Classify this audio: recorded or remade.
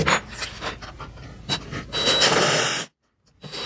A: recorded